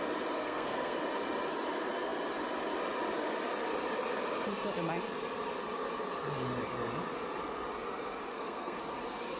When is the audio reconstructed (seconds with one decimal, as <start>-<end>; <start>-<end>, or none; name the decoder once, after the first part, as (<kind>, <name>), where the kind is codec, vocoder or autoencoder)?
0.4-1.0 (codec, SNAC); 8.3-8.8